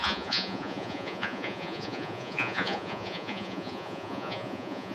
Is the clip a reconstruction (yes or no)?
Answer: yes